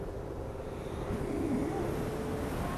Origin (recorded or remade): recorded